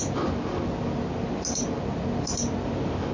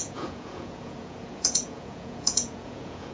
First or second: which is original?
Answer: first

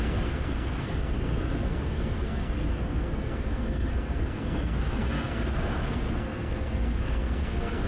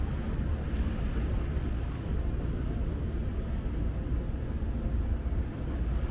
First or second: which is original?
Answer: second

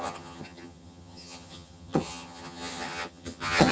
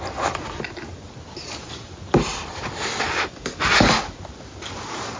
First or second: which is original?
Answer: second